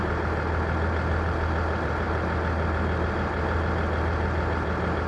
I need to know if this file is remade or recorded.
recorded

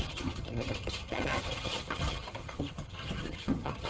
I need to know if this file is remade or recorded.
remade